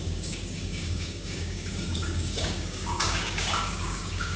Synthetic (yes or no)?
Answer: yes